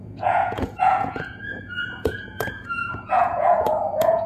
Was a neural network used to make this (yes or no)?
yes